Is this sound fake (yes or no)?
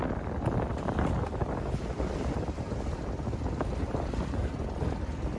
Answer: no